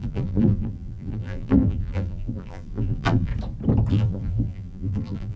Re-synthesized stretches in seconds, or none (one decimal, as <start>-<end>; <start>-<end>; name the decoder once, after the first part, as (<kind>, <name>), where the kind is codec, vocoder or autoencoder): 0.0-3.3 (vocoder, BigVGAN v2); 3.9-5.4